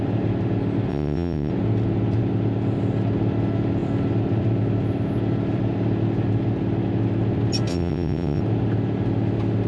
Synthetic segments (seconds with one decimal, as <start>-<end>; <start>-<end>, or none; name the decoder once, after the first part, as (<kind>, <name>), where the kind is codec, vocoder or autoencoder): 0.9-1.5 (vocoder, WaveNeXt); 7.7-8.4